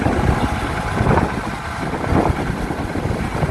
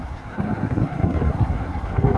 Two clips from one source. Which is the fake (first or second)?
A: second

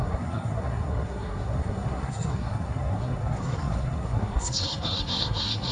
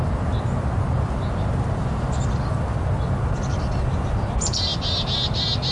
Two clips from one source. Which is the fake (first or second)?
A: first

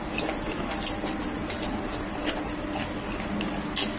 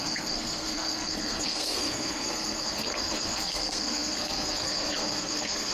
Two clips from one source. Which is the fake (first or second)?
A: second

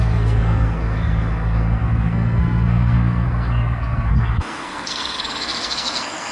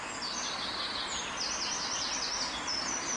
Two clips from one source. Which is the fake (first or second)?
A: first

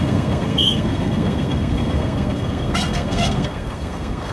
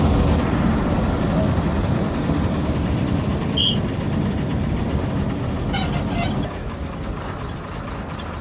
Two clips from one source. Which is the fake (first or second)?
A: first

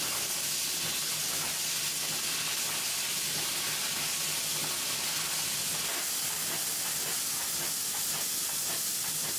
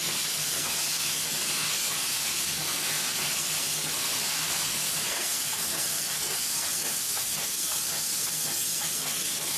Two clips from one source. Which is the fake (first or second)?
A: second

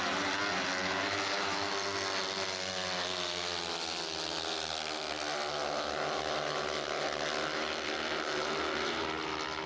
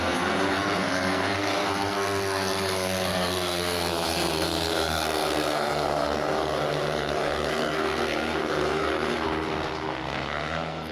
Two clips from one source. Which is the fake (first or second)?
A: second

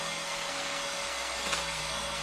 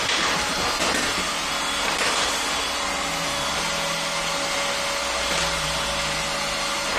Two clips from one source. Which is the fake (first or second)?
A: first